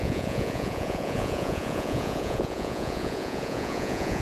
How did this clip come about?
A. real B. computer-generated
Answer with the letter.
B